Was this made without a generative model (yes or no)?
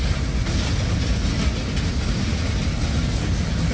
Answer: yes